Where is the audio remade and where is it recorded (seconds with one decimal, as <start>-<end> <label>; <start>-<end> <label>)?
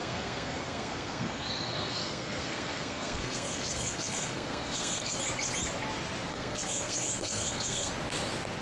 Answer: 0.0-5.2 remade; 5.2-6.3 recorded; 6.3-7.9 remade; 7.9-8.6 recorded